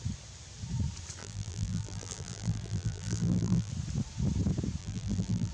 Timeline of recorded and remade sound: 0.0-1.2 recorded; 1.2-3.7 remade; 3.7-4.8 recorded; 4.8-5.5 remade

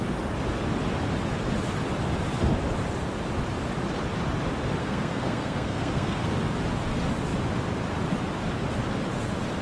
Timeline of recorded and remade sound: 0.0-4.8 recorded; 4.8-6.3 remade; 6.3-9.6 recorded

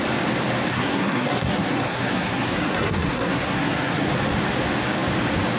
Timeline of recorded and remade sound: 0.0-0.7 recorded; 0.7-4.1 remade; 4.1-5.6 recorded

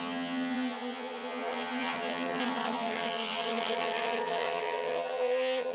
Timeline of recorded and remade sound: 0.0-5.7 remade

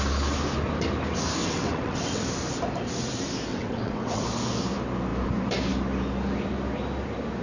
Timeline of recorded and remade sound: 0.0-1.4 recorded; 1.4-2.2 remade; 2.2-3.5 recorded; 3.5-4.2 remade; 4.2-7.4 recorded

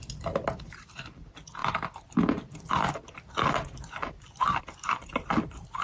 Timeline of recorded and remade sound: 0.0-5.8 recorded

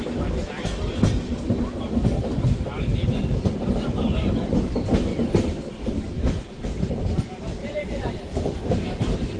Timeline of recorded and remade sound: 0.0-5.1 recorded; 5.1-5.7 remade; 5.7-7.6 recorded; 7.6-9.0 remade; 9.0-9.4 recorded